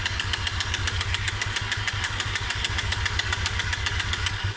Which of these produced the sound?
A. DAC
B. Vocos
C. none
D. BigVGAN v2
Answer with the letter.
A